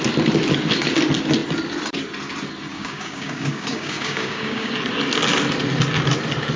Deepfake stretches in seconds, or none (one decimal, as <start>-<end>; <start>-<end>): 2.7-4.7